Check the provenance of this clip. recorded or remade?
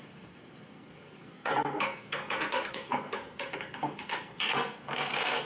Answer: remade